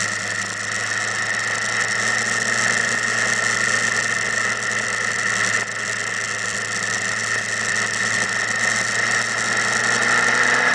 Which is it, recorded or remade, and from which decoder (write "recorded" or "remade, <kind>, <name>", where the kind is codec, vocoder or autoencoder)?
recorded